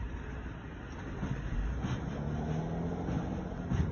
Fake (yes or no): no